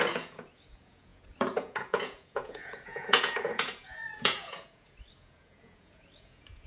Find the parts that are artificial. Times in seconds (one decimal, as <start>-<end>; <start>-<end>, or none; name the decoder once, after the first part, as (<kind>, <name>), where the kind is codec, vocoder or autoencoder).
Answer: 0.0-6.7 (vocoder, Vocos)